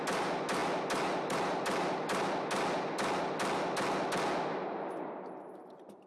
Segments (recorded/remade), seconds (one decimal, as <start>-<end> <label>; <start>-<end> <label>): 0.0-6.1 recorded